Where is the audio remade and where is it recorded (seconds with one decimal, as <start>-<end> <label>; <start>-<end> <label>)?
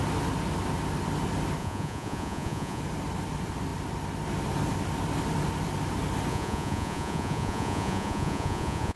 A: 0.0-1.6 recorded; 1.6-2.8 remade; 2.8-6.3 recorded; 6.3-9.0 remade